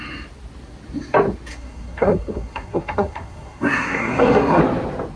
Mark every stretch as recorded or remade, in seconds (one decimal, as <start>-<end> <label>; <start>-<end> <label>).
0.0-1.5 recorded; 1.5-4.6 remade; 4.6-5.2 recorded